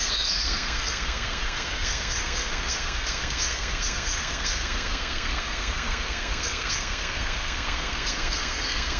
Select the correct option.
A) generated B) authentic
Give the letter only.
A